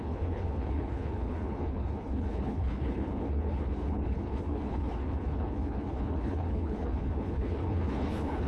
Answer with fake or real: fake